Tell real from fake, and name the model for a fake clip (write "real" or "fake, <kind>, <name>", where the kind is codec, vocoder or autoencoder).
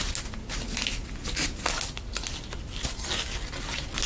real